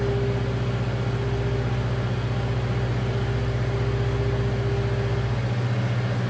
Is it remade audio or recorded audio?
recorded